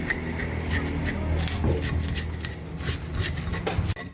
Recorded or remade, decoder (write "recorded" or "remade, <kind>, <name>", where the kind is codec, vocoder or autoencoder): recorded